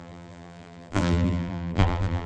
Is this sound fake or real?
fake